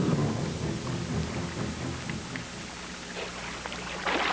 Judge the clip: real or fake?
real